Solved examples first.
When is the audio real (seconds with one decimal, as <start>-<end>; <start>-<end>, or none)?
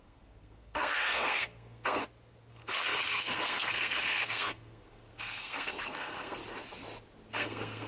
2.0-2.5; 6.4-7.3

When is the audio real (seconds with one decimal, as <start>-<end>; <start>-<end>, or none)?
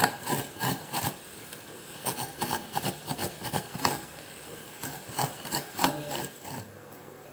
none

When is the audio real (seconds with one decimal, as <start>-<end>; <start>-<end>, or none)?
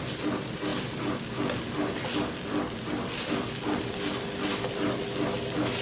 0.0-5.8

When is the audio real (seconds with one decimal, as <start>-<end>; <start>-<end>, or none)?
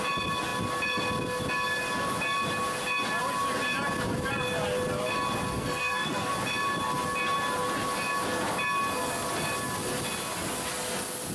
0.0-5.5; 6.3-11.3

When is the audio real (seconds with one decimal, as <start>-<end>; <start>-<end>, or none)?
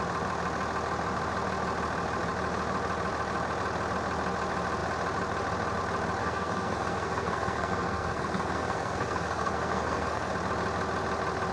0.0-6.2; 10.3-11.5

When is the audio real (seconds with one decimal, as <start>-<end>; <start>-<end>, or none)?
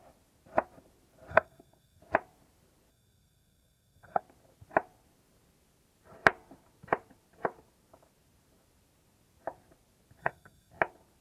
0.0-1.3; 2.0-2.9; 4.2-10.2; 10.7-11.2